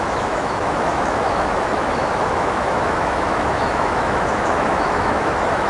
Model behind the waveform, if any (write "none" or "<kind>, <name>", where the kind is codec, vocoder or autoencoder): autoencoder, DAC-VAE